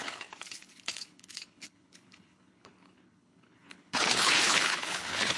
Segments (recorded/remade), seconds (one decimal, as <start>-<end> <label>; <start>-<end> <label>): 0.0-5.4 remade